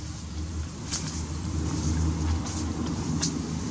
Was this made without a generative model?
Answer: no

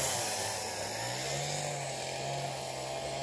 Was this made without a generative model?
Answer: yes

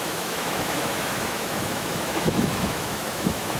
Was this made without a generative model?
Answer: no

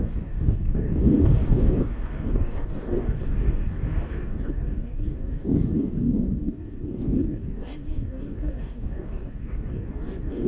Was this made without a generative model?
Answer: no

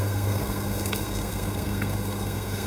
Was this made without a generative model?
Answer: no